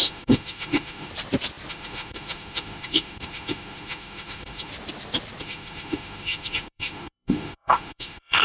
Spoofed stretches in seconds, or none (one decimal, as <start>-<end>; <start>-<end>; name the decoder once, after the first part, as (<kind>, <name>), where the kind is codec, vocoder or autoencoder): 0.0-1.1 (autoencoder, DAC-VAE); 1.7-4.7; 5.4-8.4